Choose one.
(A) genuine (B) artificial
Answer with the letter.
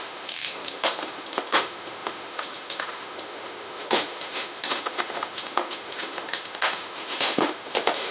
B